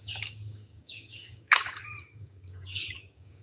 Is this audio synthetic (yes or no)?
yes